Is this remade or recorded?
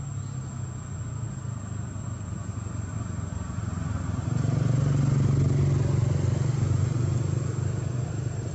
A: recorded